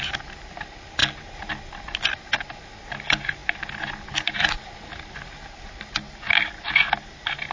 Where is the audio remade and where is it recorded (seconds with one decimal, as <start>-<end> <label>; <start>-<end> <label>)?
0.0-7.5 recorded